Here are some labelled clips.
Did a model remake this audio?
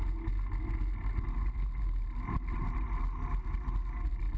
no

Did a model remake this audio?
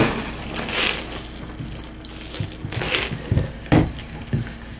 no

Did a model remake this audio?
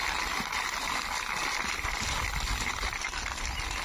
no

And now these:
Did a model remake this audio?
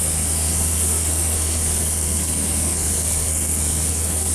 yes